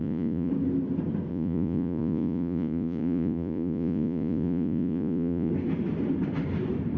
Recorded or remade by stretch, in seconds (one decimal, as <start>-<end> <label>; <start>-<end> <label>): 0.0-0.5 remade; 0.5-1.3 recorded; 1.3-5.5 remade; 5.5-7.0 recorded